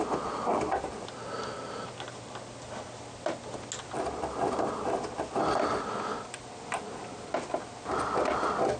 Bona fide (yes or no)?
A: yes